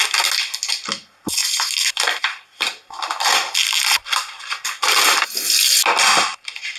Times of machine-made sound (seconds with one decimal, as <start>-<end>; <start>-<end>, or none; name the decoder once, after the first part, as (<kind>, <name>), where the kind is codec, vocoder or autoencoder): none